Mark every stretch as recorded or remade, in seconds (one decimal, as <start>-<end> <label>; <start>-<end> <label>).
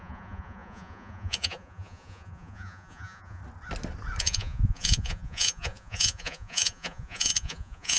0.0-3.4 remade; 3.4-4.2 recorded; 4.2-8.0 remade